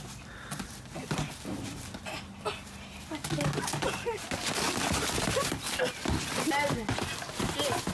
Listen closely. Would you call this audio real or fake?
real